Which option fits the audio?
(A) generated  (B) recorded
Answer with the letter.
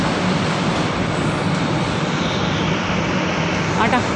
B